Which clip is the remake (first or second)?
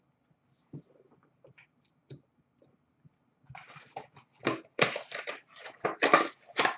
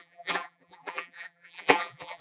second